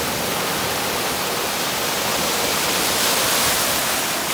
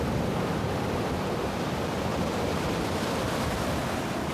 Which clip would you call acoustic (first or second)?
first